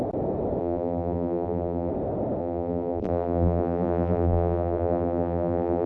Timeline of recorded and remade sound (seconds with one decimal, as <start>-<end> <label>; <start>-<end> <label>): 0.0-0.6 recorded; 0.6-1.9 remade; 1.9-2.4 recorded; 2.4-5.9 remade